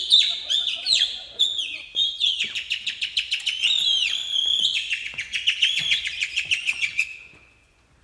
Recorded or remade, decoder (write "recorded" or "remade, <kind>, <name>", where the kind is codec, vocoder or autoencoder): remade, vocoder, Vocos